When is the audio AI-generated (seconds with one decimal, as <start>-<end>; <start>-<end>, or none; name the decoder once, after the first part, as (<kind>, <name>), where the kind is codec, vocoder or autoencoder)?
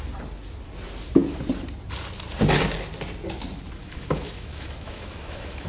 3.8-5.7 (autoencoder, DAC-VAE)